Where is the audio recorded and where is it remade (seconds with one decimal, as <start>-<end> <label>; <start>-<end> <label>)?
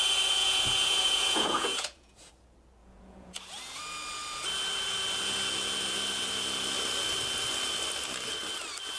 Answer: 0.0-0.4 recorded; 0.4-2.3 remade; 2.3-2.8 recorded; 2.8-3.8 remade; 3.8-9.0 recorded